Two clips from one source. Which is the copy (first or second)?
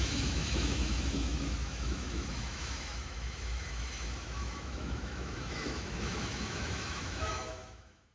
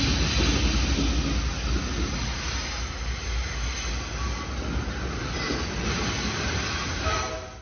first